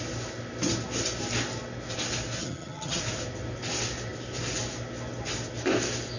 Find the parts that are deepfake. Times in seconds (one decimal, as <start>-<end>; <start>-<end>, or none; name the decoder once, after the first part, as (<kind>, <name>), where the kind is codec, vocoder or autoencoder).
2.4-3.0 (vocoder, HiFi-GAN)

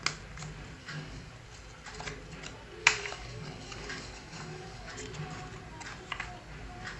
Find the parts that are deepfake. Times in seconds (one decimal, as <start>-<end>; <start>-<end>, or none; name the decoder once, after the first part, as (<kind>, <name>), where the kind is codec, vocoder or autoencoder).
0.8-1.3 (codec, DAC); 2.8-4.9

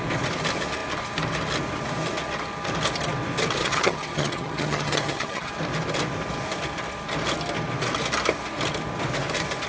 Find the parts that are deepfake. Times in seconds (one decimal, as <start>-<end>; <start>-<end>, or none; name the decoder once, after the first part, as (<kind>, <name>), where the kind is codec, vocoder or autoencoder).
3.6-5.5 (vocoder, HiFi-GAN)

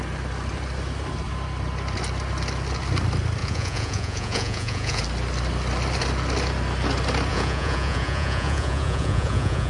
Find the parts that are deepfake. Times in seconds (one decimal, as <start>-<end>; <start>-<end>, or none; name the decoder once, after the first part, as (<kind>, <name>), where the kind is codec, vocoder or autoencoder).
3.4-5.0 (vocoder, Vocos); 7.3-9.7